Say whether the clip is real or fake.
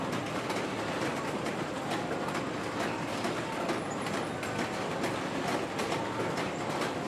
real